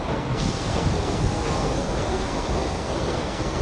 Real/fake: fake